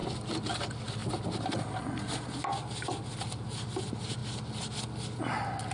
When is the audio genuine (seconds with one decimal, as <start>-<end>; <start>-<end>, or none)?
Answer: 0.0-5.7